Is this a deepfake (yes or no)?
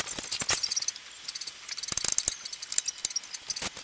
no